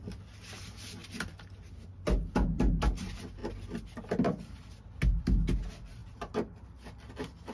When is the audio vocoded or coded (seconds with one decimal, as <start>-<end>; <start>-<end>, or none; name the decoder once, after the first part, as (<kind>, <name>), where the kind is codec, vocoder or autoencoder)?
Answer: none